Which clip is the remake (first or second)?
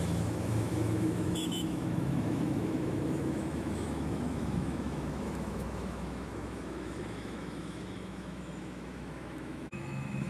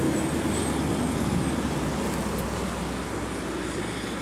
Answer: first